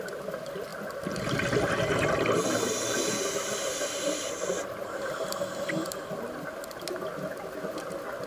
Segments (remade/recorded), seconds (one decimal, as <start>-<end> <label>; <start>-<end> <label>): 0.0-8.3 recorded